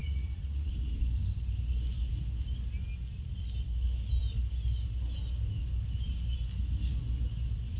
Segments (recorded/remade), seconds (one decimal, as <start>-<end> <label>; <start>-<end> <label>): 0.0-0.7 remade; 0.7-7.8 recorded